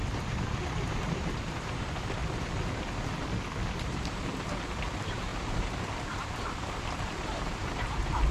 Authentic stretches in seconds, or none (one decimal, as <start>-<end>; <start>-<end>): 0.0-0.6; 2.2-3.8